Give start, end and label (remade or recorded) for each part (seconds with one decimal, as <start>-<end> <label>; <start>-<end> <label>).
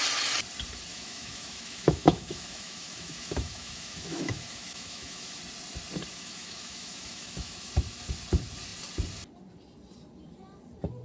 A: 0.0-0.9 recorded; 0.9-5.4 remade; 5.4-6.1 recorded; 6.1-7.7 remade; 7.7-11.0 recorded